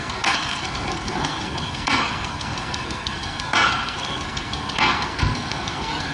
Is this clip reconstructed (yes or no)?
yes